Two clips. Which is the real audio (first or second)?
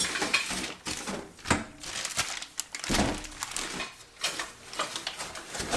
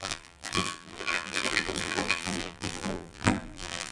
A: first